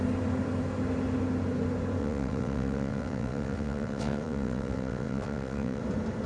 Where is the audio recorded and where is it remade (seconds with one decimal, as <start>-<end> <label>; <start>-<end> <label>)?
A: 0.0-2.0 recorded; 2.0-5.8 remade; 5.8-6.3 recorded

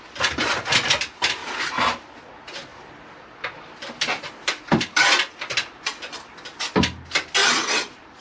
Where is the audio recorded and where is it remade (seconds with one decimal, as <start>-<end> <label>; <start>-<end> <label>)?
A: 0.0-7.4 recorded; 7.4-8.2 remade

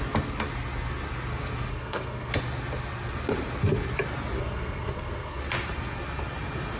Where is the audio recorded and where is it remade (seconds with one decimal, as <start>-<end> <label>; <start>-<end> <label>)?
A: 0.0-1.7 recorded; 1.7-2.3 remade; 2.3-4.4 recorded; 4.4-5.4 remade; 5.4-6.8 recorded

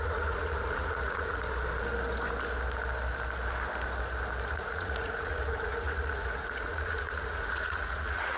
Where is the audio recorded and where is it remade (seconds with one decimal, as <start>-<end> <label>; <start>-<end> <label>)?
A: 0.0-1.4 remade; 1.4-4.5 recorded; 4.5-8.4 remade

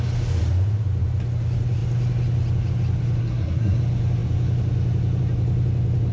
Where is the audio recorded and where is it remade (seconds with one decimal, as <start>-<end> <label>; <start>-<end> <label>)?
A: 0.0-3.2 recorded; 3.2-3.8 remade; 3.8-6.1 recorded